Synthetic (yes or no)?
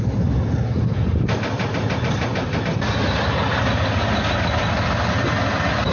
no